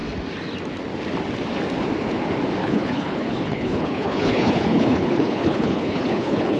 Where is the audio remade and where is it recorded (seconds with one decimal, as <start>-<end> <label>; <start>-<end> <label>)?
0.0-2.6 recorded; 2.6-6.6 remade